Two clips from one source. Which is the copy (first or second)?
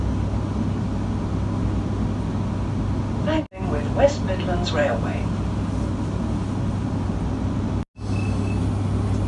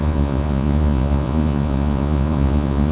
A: second